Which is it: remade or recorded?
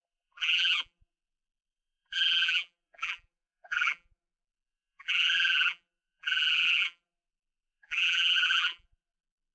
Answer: remade